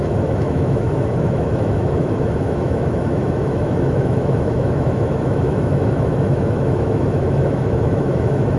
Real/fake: fake